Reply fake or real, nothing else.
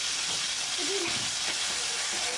real